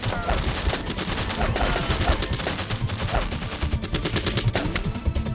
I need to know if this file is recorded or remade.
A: recorded